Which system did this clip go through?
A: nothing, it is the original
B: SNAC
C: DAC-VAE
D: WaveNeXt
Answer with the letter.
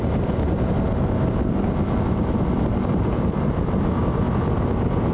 A